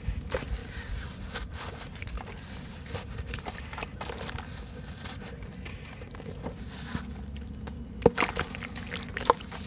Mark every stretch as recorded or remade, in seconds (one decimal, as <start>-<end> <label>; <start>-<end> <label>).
0.0-0.6 recorded; 0.6-3.6 remade; 3.6-9.7 recorded